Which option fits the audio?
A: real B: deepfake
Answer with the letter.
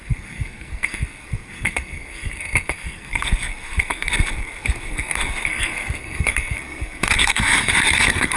B